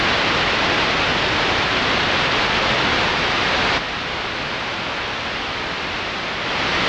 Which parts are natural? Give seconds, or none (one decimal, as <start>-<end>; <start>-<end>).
0.0-6.9